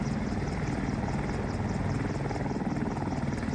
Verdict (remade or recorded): recorded